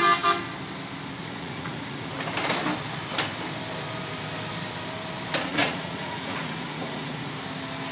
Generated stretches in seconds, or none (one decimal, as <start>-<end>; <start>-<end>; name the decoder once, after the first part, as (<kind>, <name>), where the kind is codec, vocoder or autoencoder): 1.2-2.1 (vocoder, Vocos); 5.5-7.3